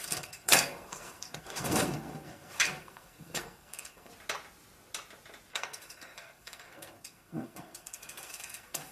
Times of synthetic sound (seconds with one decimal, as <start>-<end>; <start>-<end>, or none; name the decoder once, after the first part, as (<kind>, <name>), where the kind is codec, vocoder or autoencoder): 0.0-4.1 (codec, SNAC); 5.5-8.9